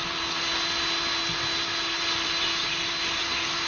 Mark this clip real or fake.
real